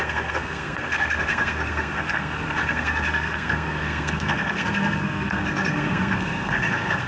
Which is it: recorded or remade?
remade